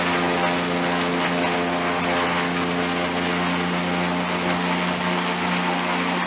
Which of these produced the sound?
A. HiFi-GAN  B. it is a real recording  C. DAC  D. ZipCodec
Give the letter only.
B